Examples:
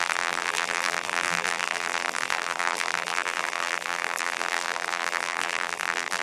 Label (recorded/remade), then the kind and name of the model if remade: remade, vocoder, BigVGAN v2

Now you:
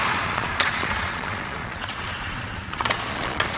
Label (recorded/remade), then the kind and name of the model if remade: remade, vocoder, Vocos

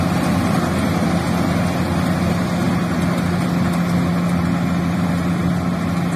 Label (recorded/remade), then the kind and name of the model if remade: recorded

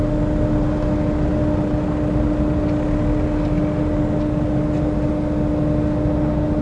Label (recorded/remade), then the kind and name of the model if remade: recorded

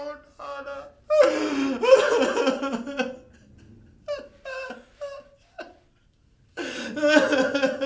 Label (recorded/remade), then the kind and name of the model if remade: recorded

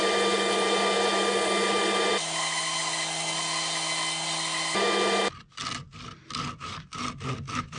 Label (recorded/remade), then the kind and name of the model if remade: recorded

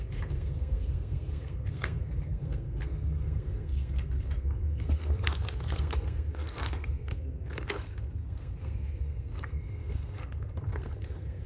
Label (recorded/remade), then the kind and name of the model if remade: remade, codec, SNAC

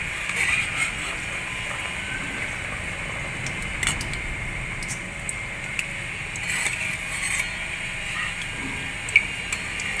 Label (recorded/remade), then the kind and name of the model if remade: recorded